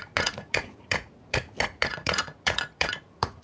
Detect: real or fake fake